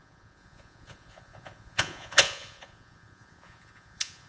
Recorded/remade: remade